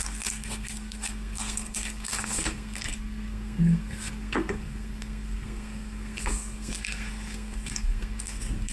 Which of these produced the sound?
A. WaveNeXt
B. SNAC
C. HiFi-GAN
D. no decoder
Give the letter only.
B